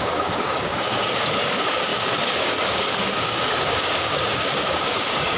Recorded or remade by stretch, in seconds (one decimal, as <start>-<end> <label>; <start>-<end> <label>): 0.0-5.4 remade